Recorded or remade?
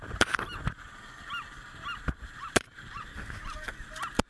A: recorded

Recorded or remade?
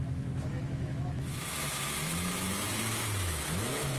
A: remade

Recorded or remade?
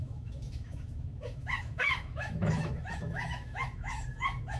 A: remade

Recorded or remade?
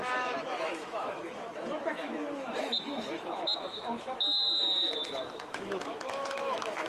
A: remade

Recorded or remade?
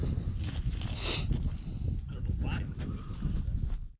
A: recorded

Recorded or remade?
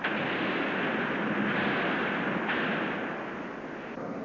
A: recorded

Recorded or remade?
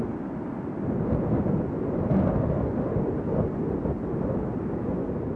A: recorded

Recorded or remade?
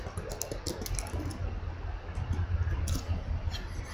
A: recorded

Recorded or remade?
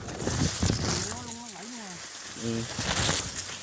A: recorded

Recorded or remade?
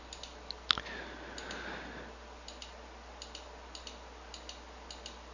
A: recorded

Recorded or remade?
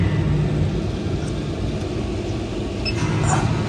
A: recorded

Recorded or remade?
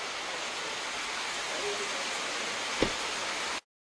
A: recorded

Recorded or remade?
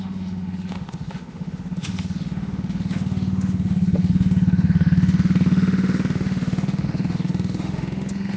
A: remade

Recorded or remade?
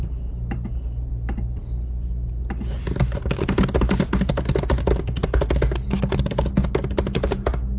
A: recorded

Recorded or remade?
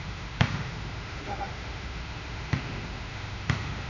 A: remade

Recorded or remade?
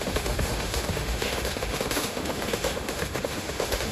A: remade